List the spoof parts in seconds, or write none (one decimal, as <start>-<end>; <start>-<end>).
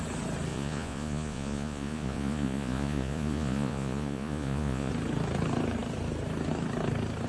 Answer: 0.5-4.9